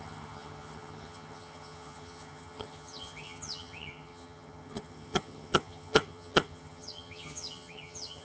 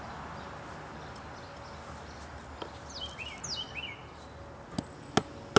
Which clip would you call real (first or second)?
second